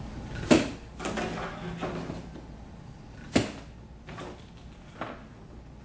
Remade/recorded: recorded